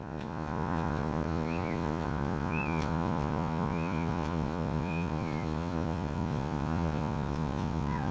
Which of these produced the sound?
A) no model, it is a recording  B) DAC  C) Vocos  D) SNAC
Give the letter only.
C